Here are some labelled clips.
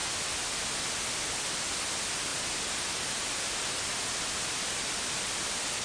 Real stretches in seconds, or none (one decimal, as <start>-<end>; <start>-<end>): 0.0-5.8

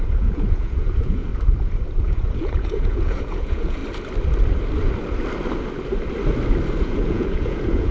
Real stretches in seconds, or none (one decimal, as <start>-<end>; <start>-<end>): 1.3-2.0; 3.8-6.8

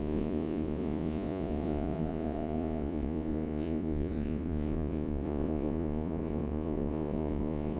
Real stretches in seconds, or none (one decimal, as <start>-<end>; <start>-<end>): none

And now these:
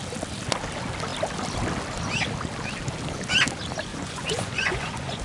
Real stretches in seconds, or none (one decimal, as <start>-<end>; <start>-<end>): 0.0-3.9

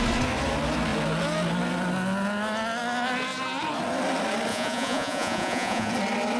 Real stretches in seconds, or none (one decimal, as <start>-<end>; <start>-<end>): 0.0-4.5; 5.9-6.4